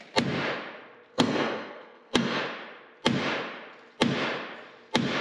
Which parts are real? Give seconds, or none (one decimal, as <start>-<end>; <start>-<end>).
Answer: 0.0-1.1; 2.4-5.2